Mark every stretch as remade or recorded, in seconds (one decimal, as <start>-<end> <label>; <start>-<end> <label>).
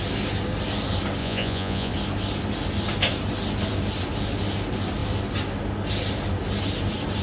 0.0-1.2 recorded; 1.2-1.9 remade; 1.9-7.2 recorded